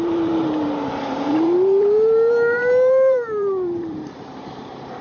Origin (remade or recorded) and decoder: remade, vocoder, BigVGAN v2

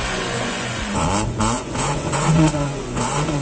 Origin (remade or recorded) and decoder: remade, vocoder, Vocos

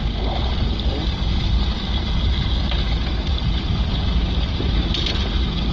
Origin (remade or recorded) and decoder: recorded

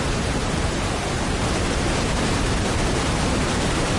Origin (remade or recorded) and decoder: remade, vocoder, BigVGAN v2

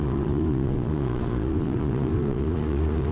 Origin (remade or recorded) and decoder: remade, vocoder, Vocos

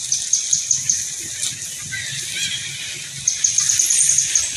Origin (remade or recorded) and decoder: recorded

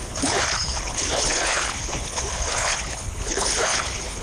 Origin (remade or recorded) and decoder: remade, codec, HILCodec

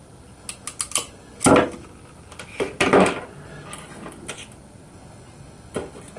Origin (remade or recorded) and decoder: recorded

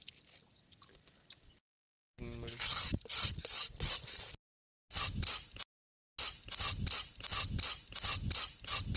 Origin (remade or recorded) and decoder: recorded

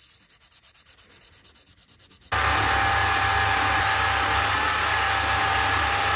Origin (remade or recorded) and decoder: recorded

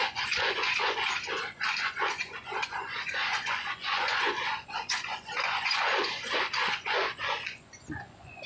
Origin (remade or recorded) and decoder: remade, vocoder, Vocos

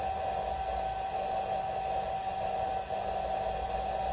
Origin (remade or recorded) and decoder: recorded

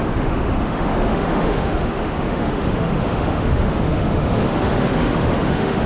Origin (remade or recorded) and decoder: remade, autoencoder, DAC-VAE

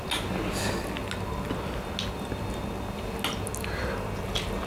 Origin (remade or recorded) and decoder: recorded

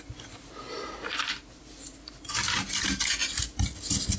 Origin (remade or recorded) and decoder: recorded